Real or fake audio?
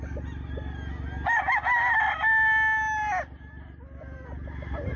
real